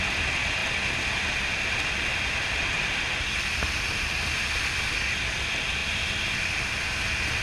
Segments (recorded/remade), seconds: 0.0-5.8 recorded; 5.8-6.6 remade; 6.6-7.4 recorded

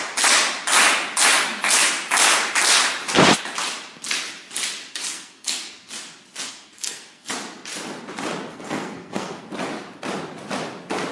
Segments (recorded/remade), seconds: 0.0-4.9 recorded; 4.9-5.9 remade; 5.9-6.5 recorded; 6.5-7.3 remade; 7.3-8.5 recorded; 8.5-9.4 remade; 9.4-11.1 recorded

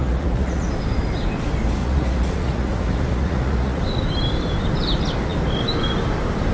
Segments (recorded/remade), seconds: 0.0-0.7 remade; 0.7-1.8 recorded; 1.8-3.8 remade; 3.8-6.5 recorded

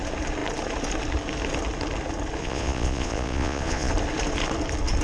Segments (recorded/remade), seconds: 0.0-2.4 recorded; 2.4-3.9 remade; 3.9-5.0 recorded

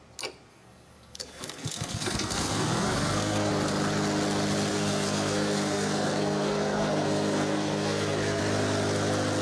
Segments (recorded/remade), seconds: 0.0-0.5 recorded; 0.5-3.5 remade; 3.5-4.7 recorded; 4.7-8.4 remade; 8.4-9.4 recorded